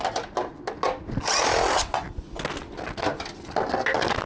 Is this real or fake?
real